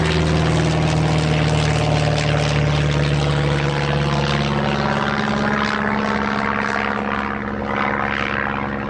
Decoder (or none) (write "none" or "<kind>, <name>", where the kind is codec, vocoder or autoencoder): none